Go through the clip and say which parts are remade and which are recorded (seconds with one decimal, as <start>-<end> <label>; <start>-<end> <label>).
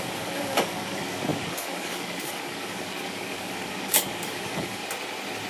0.0-4.8 remade; 4.8-5.5 recorded